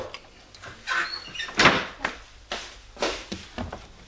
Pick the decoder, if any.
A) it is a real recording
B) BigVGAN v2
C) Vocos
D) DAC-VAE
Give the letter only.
A